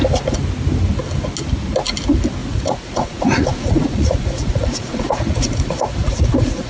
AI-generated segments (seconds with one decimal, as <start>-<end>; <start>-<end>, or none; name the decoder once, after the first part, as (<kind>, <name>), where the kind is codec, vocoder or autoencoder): 2.4-6.7 (vocoder, Vocos)